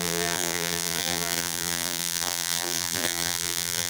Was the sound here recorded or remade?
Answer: remade